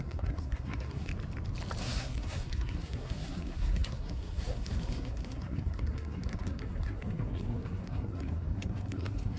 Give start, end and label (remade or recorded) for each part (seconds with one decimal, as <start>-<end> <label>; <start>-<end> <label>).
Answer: 0.0-1.1 remade; 1.1-1.8 recorded; 1.8-9.4 remade